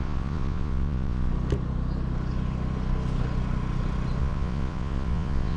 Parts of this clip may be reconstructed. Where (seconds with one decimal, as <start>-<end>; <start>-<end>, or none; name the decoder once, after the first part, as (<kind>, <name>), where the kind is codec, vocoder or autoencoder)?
0.0-1.3 (vocoder, Vocos); 4.2-5.6